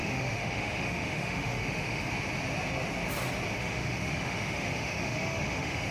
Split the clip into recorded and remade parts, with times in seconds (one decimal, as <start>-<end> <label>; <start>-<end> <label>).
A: 0.0-2.1 remade; 2.1-3.6 recorded; 3.6-5.9 remade